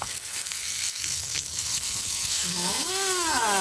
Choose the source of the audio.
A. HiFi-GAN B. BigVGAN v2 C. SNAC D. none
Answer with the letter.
C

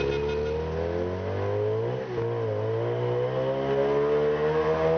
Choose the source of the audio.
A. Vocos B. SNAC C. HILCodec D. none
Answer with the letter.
D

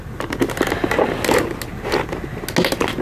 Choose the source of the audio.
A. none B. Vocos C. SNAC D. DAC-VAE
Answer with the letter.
A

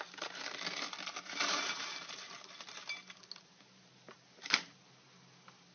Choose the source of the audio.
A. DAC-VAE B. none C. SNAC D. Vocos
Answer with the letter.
B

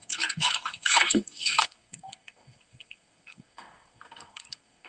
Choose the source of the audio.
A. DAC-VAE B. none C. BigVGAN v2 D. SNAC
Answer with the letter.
D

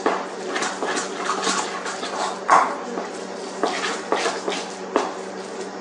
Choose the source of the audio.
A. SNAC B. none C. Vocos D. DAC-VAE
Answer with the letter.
B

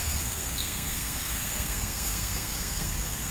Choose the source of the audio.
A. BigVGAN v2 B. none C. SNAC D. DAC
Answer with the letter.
C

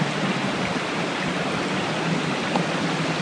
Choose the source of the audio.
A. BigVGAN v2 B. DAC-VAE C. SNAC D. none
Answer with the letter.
D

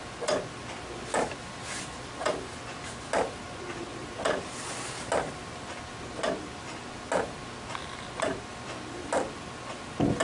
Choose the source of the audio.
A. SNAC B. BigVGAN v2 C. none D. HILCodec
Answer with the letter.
C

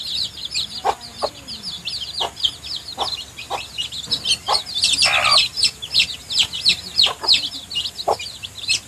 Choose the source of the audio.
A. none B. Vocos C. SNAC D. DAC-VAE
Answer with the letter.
A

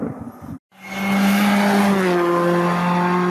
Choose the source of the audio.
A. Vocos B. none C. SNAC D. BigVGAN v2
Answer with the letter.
B